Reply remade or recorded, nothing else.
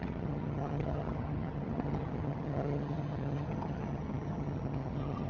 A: remade